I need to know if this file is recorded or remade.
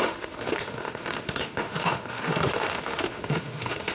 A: remade